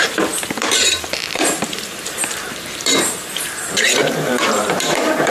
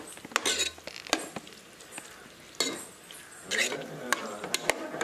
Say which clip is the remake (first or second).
first